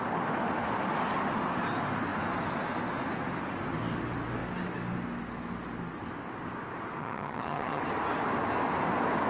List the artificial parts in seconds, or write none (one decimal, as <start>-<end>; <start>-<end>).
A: 7.0-7.8